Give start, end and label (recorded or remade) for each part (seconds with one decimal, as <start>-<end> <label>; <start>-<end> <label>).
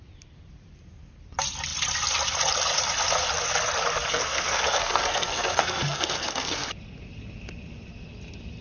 0.0-4.1 recorded; 4.1-6.7 remade; 6.7-8.6 recorded